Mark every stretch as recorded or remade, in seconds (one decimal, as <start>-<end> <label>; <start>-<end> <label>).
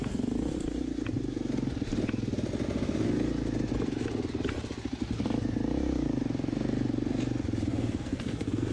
0.0-7.7 recorded; 7.7-8.7 remade